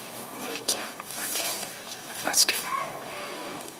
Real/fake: fake